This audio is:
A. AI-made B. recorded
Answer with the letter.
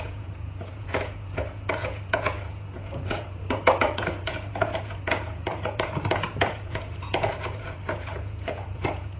A